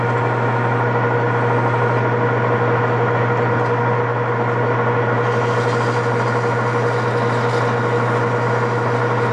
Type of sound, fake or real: real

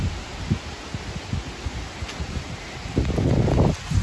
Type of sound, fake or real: real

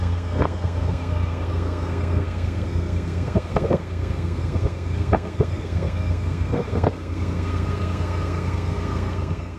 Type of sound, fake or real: fake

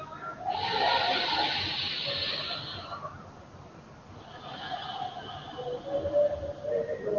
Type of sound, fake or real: real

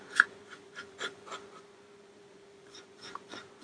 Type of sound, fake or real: fake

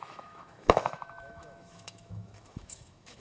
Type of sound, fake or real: fake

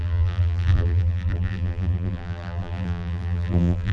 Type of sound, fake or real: fake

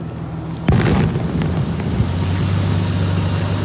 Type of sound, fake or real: real